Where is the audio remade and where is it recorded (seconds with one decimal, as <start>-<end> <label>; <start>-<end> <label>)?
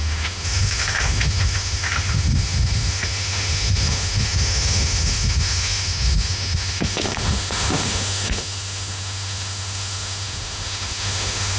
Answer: 0.0-11.6 remade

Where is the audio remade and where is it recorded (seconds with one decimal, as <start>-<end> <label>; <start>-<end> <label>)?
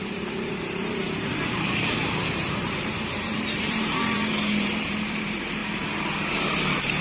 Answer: 0.0-5.6 remade; 5.6-6.3 recorded; 6.3-7.0 remade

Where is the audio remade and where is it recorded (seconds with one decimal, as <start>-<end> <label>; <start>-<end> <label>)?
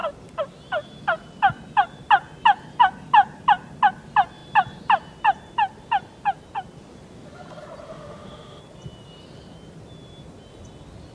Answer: 0.0-7.9 recorded; 7.9-8.6 remade; 8.6-11.1 recorded